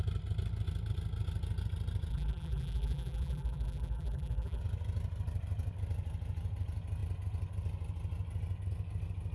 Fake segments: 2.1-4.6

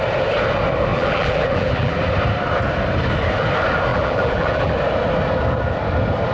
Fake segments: 0.9-2.0; 3.9-4.7

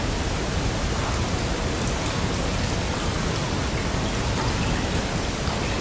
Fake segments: 2.5-4.4

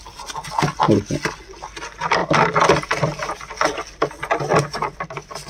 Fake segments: 2.2-3.3; 4.5-5.5

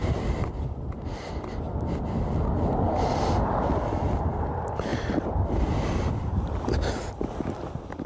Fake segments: none